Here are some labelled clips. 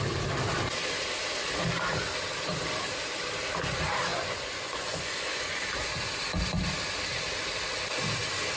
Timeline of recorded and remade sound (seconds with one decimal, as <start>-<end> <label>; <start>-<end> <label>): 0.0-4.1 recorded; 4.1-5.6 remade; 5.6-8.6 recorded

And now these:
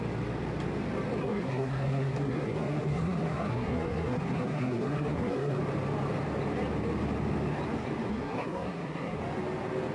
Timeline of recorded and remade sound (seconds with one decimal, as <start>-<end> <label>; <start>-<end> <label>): 0.0-1.2 recorded; 1.2-5.6 remade; 5.6-8.1 recorded; 8.1-9.2 remade; 9.2-9.9 recorded

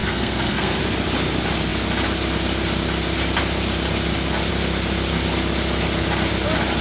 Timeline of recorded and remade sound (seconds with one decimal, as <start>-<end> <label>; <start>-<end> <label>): 0.0-0.8 remade; 0.8-6.8 recorded